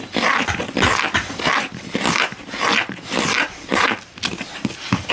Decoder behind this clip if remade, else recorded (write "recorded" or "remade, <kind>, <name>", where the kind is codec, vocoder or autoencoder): recorded